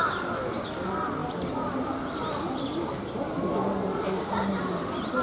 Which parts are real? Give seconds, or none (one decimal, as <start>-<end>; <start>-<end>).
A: 0.0-5.2